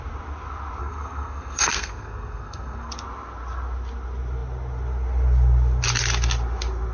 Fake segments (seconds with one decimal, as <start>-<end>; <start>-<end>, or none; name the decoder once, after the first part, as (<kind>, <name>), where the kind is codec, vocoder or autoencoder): 0.8-2.9 (codec, SNAC)